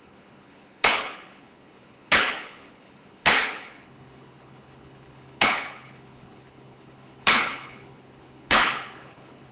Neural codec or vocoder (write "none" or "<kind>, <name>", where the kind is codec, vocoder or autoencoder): codec, HILCodec